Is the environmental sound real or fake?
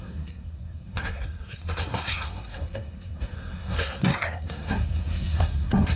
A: fake